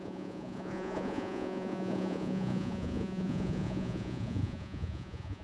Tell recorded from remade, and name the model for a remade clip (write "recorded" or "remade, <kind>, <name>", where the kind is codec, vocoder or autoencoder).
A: remade, vocoder, Vocos